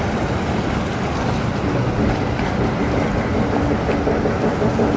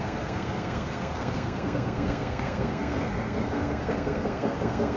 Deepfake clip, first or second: second